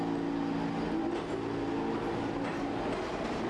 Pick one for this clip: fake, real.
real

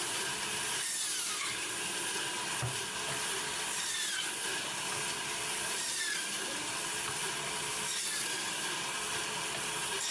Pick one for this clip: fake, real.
real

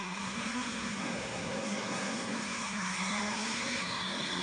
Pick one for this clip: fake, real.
fake